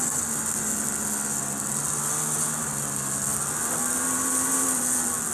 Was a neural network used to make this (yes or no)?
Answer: no